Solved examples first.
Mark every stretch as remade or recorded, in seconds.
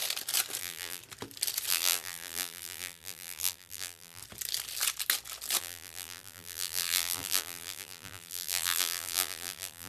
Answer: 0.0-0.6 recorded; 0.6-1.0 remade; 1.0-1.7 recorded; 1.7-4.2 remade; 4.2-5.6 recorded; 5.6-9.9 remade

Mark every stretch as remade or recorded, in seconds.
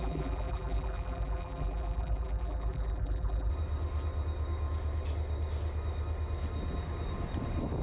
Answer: 0.0-3.5 remade; 3.5-7.8 recorded